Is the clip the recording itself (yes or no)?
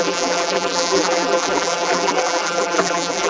no